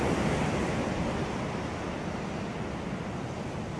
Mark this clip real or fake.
real